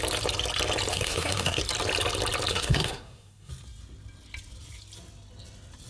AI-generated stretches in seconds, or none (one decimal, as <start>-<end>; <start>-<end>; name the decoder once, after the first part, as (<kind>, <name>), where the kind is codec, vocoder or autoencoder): 0.9-1.6 (codec, SNAC); 2.5-3.5